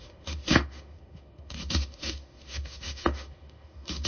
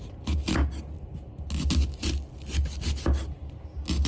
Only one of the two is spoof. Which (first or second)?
first